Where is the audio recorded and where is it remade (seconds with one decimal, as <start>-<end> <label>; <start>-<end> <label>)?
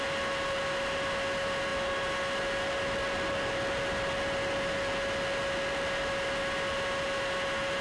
0.0-7.8 recorded